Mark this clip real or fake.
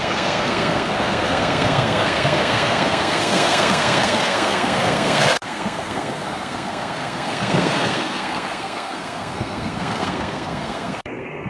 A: fake